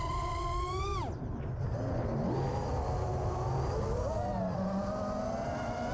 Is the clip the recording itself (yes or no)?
yes